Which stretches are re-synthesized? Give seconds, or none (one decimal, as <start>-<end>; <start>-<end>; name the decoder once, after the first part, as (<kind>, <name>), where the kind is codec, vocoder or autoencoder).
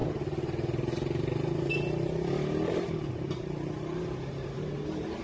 3.1-5.2 (vocoder, BigVGAN v2)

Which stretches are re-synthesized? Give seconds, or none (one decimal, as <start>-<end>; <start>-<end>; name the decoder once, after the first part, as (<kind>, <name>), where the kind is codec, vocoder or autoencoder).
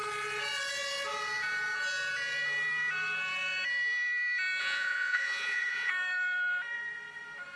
4.6-5.9 (vocoder, Vocos)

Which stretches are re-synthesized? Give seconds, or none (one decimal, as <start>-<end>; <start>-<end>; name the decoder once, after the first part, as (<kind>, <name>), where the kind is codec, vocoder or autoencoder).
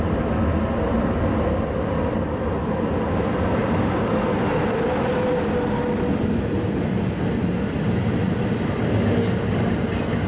none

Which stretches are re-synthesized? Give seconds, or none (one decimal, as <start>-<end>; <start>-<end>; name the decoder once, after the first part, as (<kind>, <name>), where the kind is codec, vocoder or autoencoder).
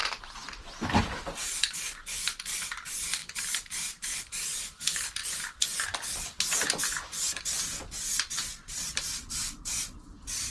1.0-5.2 (vocoder, BigVGAN v2); 7.4-10.5